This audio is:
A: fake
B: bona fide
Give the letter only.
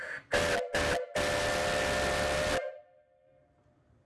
B